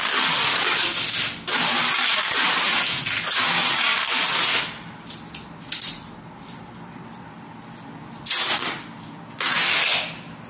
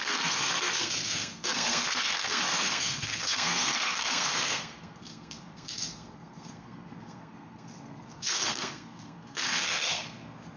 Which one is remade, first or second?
second